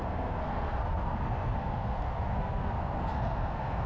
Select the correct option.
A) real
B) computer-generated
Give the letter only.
B